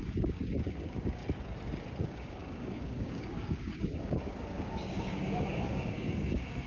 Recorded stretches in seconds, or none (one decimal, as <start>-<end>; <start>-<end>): 1.2-2.0